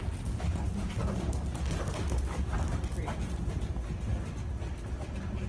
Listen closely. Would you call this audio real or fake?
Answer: real